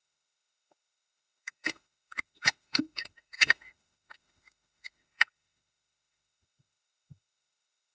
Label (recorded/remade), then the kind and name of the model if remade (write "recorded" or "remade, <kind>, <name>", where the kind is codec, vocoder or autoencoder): remade, autoencoder, DAC-VAE